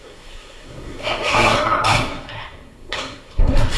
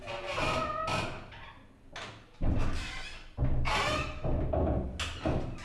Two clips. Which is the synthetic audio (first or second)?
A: first